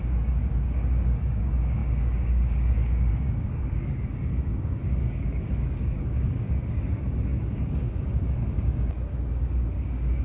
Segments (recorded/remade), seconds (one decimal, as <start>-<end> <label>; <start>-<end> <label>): 0.0-10.2 remade